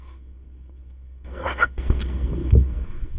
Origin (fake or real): fake